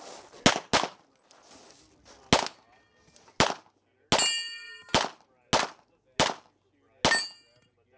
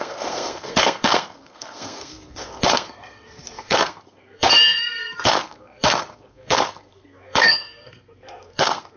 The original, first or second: first